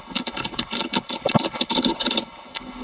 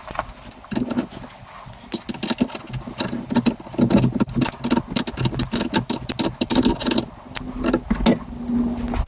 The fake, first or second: first